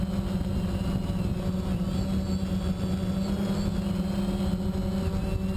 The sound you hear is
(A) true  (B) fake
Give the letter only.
A